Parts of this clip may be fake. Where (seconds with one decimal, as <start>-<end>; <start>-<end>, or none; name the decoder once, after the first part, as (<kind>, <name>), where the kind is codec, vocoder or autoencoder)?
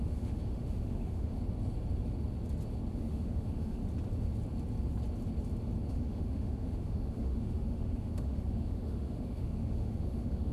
0.0-1.4 (autoencoder, DAC-VAE); 2.9-3.8; 5.9-10.5